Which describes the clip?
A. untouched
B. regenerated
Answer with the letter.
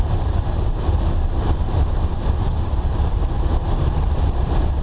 B